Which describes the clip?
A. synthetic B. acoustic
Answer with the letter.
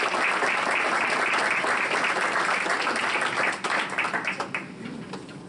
B